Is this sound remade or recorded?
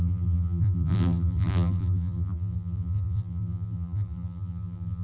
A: remade